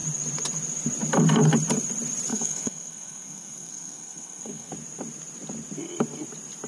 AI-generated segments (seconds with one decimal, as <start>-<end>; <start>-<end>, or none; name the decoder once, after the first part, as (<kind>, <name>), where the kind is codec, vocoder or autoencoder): 2.3-4.7 (codec, SNAC)